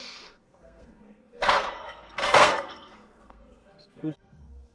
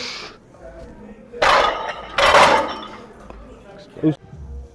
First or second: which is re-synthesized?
first